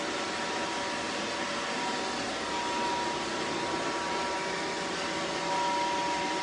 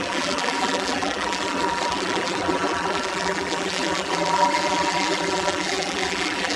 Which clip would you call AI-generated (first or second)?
second